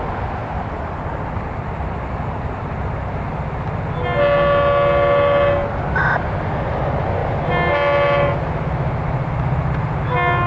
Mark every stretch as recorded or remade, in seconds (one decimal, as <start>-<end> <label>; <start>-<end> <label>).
0.0-10.5 recorded